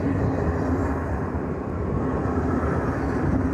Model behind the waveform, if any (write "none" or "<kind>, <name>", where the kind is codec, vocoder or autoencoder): none